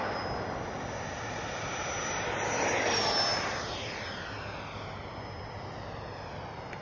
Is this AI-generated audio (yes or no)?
no